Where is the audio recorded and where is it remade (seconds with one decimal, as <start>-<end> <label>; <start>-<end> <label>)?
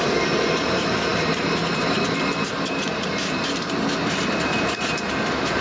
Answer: 0.0-5.6 remade